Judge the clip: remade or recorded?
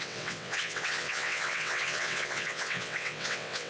remade